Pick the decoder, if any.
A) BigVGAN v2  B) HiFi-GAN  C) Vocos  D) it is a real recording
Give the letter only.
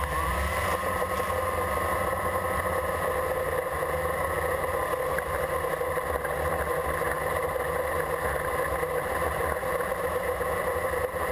D